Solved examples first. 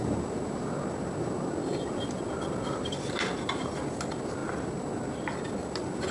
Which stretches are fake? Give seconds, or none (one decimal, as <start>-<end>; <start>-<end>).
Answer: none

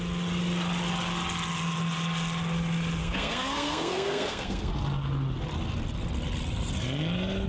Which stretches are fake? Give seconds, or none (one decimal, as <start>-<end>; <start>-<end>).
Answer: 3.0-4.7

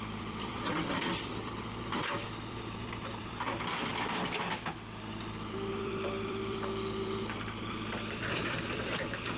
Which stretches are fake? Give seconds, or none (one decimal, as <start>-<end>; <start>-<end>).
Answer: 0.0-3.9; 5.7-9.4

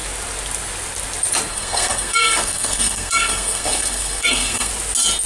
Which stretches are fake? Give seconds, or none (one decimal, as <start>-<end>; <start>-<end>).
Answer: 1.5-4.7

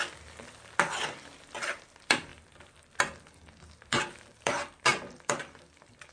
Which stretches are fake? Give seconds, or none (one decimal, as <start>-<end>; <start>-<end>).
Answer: 0.0-2.3; 3.9-6.1

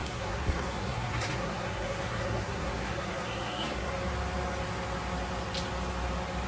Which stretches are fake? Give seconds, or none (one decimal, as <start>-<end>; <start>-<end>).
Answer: 0.0-3.9